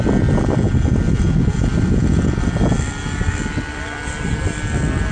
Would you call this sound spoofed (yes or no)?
no